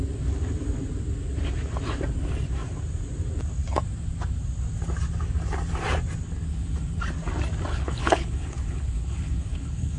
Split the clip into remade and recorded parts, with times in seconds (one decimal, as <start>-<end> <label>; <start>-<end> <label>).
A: 0.0-6.5 recorded; 6.5-7.0 remade; 7.0-7.7 recorded; 7.7-10.0 remade